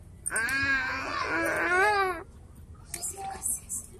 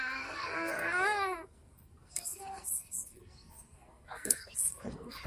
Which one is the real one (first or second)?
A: first